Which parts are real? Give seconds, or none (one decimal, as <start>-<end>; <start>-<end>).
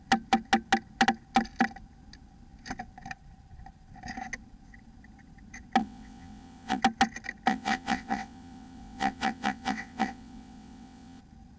0.0-5.8; 6.8-7.5; 11.2-11.6